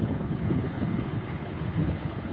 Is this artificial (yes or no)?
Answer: yes